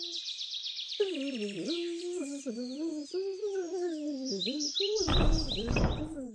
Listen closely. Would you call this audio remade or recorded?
recorded